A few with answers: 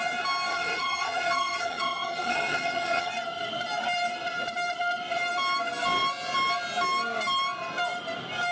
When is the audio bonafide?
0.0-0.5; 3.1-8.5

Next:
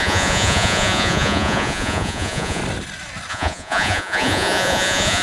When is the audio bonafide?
2.6-3.3

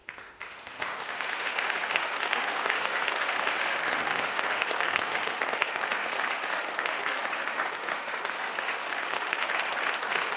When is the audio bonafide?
none

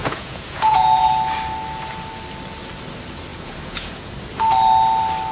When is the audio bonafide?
1.1-3.3; 4.1-5.3